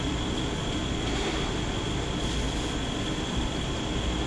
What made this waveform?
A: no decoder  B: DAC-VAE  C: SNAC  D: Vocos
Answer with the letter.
A